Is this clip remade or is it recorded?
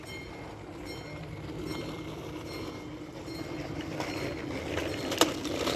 recorded